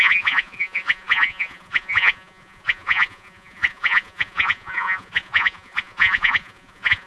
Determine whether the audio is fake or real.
fake